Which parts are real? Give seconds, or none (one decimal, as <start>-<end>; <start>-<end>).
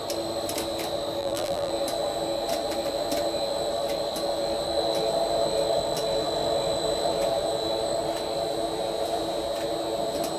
0.0-1.2; 1.7-10.4